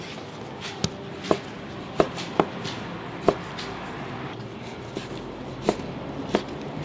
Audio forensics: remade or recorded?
recorded